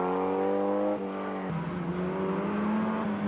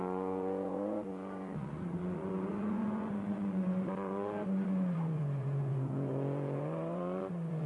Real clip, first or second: first